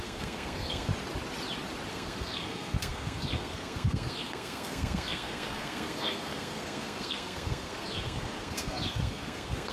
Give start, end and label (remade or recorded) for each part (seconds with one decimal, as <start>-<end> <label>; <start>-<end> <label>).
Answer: 0.0-0.9 remade; 0.9-1.9 recorded; 1.9-9.7 remade